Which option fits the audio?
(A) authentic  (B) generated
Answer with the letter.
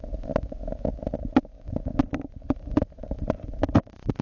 A